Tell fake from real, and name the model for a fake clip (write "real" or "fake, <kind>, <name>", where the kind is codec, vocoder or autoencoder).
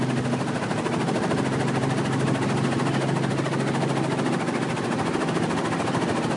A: real